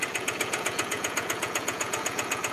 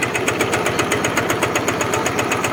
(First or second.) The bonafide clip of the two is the second